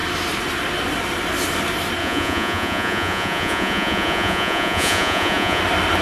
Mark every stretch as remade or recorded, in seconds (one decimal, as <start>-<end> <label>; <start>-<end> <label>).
0.0-2.0 recorded; 2.0-5.6 remade; 5.6-6.0 recorded